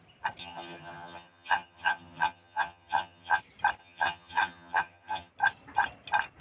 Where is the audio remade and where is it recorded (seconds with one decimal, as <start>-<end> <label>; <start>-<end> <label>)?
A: 0.0-0.4 recorded; 0.4-3.4 remade; 3.4-3.8 recorded; 3.8-5.3 remade; 5.3-6.4 recorded